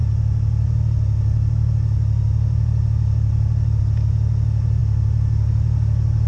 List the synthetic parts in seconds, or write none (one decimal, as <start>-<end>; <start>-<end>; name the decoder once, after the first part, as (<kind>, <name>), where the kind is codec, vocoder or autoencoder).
none